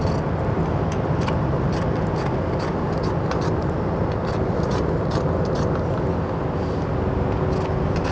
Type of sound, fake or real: real